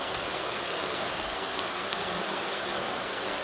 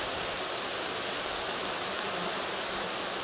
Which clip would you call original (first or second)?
second